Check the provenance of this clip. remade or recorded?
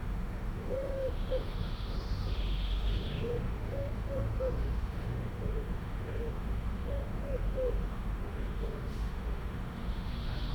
remade